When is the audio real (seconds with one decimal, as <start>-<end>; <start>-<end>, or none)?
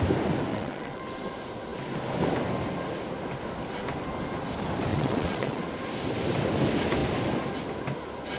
0.0-0.5; 1.0-4.9; 5.7-8.4